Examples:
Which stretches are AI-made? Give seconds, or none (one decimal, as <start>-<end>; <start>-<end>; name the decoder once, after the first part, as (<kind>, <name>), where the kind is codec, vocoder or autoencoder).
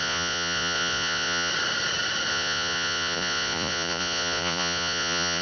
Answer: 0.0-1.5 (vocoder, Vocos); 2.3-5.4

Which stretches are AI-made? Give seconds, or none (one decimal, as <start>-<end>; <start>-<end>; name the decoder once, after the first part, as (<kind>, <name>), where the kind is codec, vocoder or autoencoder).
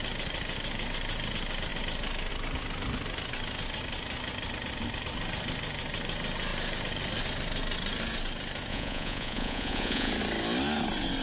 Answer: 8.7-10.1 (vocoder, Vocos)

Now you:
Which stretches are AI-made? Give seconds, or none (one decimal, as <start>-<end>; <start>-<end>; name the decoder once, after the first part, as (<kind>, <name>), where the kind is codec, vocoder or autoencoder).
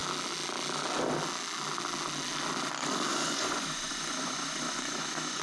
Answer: 3.1-5.4 (vocoder, Vocos)